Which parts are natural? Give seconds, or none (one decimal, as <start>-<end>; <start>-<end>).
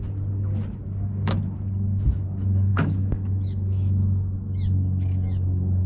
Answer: 0.0-2.7